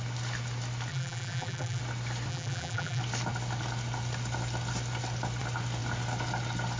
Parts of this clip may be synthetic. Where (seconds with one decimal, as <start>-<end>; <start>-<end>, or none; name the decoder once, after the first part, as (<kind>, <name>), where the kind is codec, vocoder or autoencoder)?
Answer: 0.9-1.8 (vocoder, BigVGAN v2); 2.3-3.0